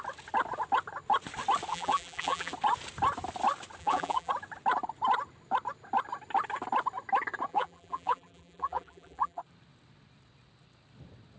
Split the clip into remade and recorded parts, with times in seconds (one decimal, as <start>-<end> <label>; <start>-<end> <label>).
0.0-1.7 recorded; 1.7-2.5 remade; 2.5-3.8 recorded; 3.8-4.3 remade; 4.3-7.5 recorded; 7.5-9.4 remade; 9.4-11.4 recorded